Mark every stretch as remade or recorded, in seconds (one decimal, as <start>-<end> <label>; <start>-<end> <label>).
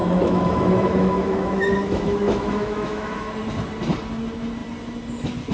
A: 0.0-3.3 remade; 3.3-5.5 recorded